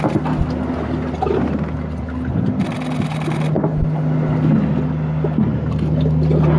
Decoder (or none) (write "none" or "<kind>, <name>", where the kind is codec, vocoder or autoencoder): none